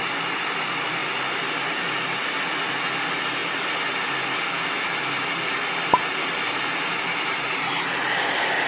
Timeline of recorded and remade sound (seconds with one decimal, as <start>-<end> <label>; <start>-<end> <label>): 0.0-8.7 recorded